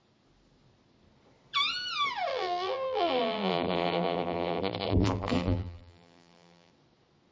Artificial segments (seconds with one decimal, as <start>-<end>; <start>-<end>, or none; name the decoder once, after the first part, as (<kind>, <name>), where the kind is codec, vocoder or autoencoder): 2.3-6.7 (vocoder, BigVGAN v2)